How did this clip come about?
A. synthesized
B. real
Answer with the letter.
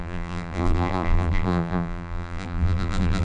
A